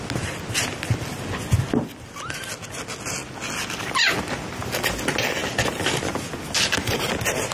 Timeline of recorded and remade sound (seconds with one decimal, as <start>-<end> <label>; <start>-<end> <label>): 0.0-7.5 recorded